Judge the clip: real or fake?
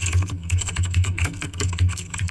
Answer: fake